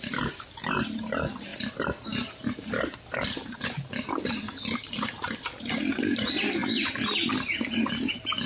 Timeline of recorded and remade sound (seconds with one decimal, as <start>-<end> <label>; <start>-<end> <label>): 0.0-1.5 recorded; 1.5-5.3 remade; 5.3-8.5 recorded